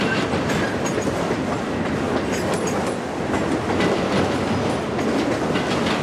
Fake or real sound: real